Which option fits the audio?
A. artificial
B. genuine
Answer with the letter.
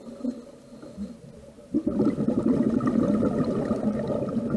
B